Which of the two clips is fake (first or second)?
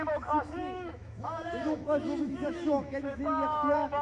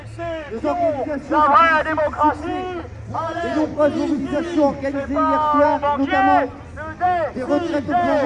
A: first